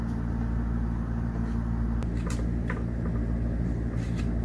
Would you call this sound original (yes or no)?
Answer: yes